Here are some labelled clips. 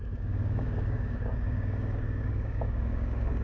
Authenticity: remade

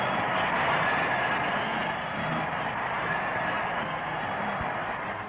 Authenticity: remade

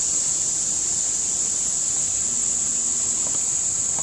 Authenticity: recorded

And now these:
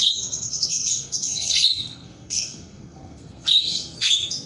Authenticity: remade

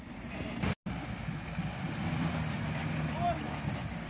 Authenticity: recorded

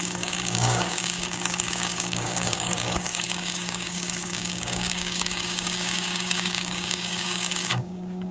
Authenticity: remade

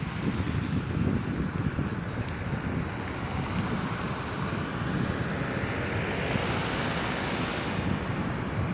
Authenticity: recorded